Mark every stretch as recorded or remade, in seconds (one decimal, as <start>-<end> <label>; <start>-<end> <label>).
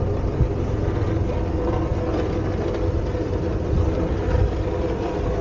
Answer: 0.0-5.4 recorded